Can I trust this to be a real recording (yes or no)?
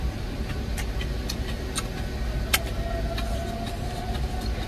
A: yes